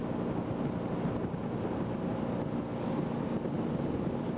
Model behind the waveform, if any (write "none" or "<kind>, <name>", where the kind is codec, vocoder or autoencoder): none